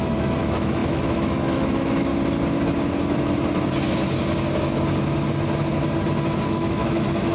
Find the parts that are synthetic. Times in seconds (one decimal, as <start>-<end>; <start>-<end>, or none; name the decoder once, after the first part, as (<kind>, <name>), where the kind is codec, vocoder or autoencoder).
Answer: 0.0-2.1 (autoencoder, DAC-VAE); 6.5-7.3